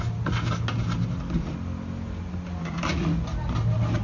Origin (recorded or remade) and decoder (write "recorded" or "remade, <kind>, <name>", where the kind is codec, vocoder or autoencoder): recorded